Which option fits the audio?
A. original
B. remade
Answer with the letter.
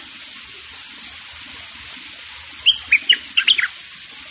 A